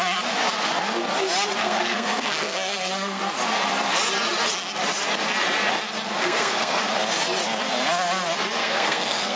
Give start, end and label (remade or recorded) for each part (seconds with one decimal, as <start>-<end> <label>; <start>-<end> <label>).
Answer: 0.0-1.6 recorded; 1.6-3.2 remade; 3.2-6.2 recorded; 6.2-6.8 remade; 6.8-8.6 recorded; 8.6-9.4 remade